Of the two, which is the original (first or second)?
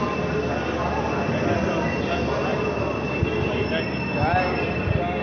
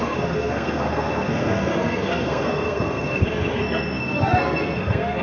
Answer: first